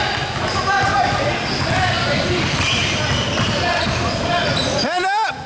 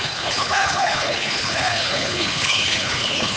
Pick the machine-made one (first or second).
second